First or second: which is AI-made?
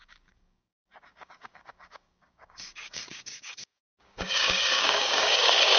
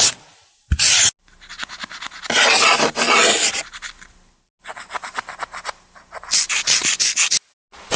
first